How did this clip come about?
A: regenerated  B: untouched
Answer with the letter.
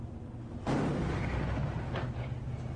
B